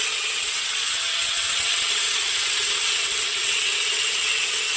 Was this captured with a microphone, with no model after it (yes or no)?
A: no